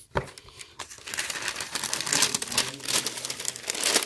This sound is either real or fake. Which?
real